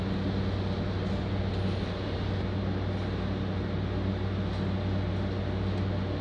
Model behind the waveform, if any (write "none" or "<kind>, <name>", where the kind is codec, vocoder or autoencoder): none